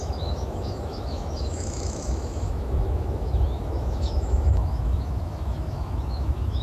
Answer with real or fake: fake